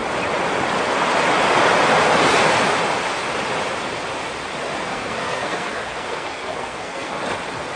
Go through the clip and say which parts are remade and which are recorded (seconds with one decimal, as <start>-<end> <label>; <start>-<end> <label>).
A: 0.0-4.9 recorded; 4.9-7.2 remade; 7.2-7.8 recorded

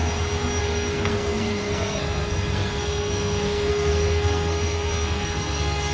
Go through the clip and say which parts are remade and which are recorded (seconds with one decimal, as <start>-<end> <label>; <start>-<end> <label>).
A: 0.0-0.6 recorded; 0.6-5.9 remade

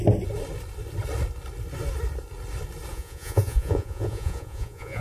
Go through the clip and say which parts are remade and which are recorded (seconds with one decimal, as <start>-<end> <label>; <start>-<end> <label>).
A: 0.0-2.9 recorded; 2.9-5.0 remade

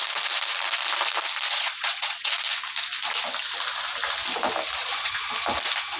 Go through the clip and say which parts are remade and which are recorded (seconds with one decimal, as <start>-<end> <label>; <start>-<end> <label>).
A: 0.0-1.5 recorded; 1.5-2.3 remade; 2.3-4.8 recorded; 4.8-5.3 remade; 5.3-6.0 recorded

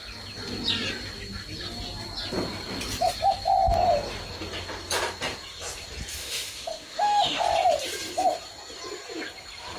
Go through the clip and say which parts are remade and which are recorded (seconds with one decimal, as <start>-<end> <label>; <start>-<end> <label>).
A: 0.0-6.2 recorded; 6.2-7.4 remade; 7.4-9.8 recorded

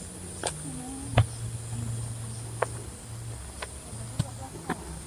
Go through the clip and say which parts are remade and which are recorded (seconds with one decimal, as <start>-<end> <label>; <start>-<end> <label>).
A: 0.0-5.1 recorded